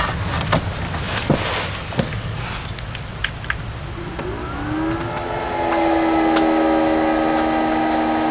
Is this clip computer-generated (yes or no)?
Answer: no